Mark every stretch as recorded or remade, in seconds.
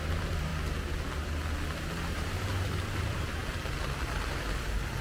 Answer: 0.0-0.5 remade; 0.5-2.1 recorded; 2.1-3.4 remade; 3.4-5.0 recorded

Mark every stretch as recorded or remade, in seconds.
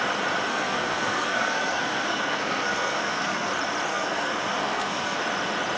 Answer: 0.0-0.5 recorded; 0.5-3.5 remade; 3.5-3.9 recorded; 3.9-5.2 remade; 5.2-5.8 recorded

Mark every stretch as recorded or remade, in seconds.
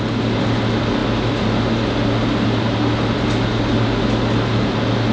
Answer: 0.0-5.1 recorded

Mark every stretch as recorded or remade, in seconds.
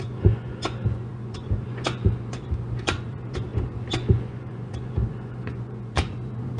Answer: 0.0-6.6 remade